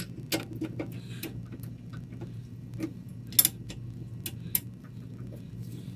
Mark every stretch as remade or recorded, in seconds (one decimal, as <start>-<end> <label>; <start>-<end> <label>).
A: 0.0-6.0 recorded